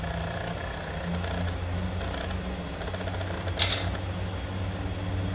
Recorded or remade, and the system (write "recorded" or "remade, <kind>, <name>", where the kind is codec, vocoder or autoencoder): recorded